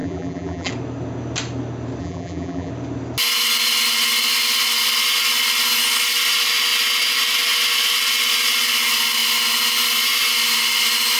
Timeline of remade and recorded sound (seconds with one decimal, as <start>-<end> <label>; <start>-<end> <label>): 0.0-0.7 remade; 0.7-2.0 recorded; 2.0-2.7 remade; 2.7-11.2 recorded